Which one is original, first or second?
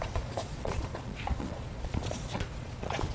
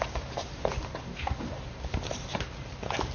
second